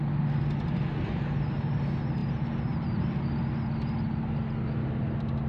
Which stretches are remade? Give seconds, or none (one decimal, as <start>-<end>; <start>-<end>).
2.2-3.2